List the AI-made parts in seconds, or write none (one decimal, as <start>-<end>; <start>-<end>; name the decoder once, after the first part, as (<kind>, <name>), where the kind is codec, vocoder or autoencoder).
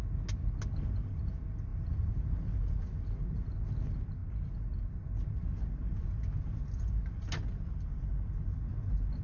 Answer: none